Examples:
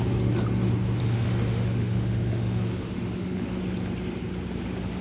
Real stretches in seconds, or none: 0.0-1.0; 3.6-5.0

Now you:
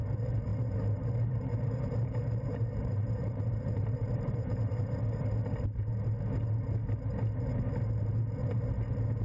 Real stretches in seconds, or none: 0.0-0.5; 5.0-9.2

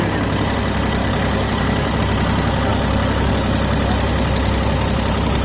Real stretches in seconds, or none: 0.0-1.0; 2.0-2.7; 3.3-5.4

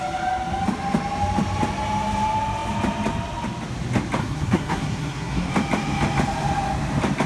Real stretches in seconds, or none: 0.0-4.2; 5.5-7.3

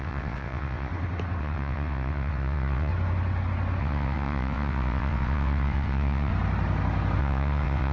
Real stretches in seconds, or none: 0.9-1.4; 2.9-3.8; 6.3-7.2